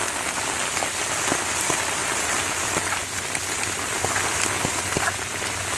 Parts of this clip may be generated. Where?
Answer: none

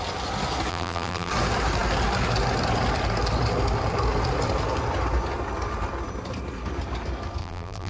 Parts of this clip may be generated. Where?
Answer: 0.7-1.3 (vocoder, BigVGAN v2); 7.4-7.9

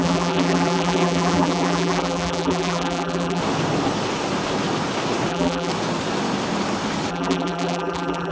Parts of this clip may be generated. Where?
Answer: 0.0-3.4 (vocoder, BigVGAN v2); 5.3-5.7; 7.1-8.3

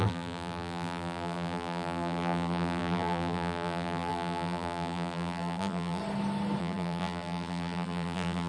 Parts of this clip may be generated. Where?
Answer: 0.0-6.0 (vocoder, BigVGAN v2); 6.6-8.5

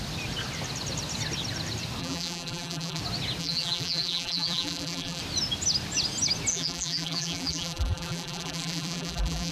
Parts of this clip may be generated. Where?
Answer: 2.0-3.0 (vocoder, BigVGAN v2); 3.4-5.2; 6.5-9.5

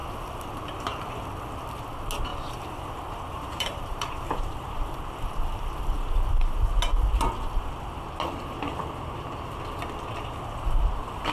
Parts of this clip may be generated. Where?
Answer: 2.3-6.6 (vocoder, BigVGAN v2)

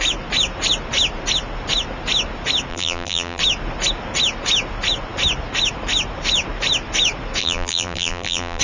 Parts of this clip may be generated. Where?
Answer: 2.7-3.4 (vocoder, BigVGAN v2); 7.4-8.6

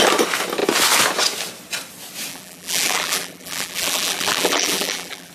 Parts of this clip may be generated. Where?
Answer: 2.3-5.3 (vocoder, BigVGAN v2)